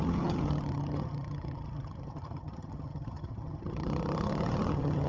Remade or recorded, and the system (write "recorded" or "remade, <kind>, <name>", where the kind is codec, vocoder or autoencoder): remade, vocoder, HiFi-GAN